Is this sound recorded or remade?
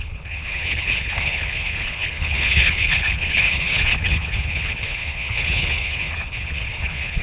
remade